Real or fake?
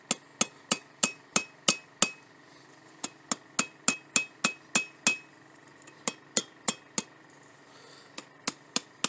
real